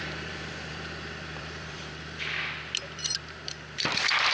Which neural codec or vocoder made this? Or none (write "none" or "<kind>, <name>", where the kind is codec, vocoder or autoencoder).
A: vocoder, BigVGAN v2